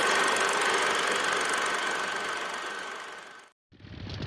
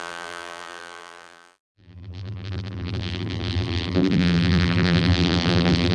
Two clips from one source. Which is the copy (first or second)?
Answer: second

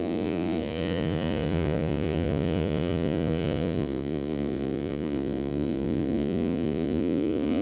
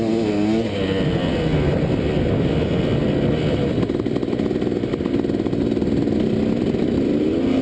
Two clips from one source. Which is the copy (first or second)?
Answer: first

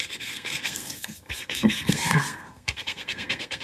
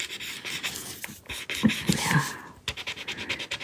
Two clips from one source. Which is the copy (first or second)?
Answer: first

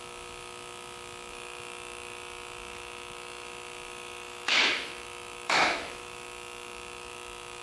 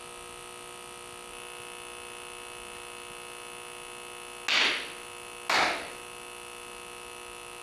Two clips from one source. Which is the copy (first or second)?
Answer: first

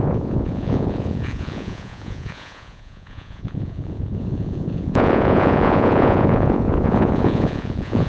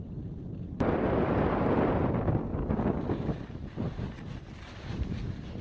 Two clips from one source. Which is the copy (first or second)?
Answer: first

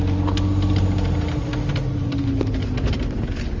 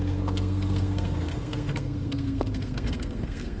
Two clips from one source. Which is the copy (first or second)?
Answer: second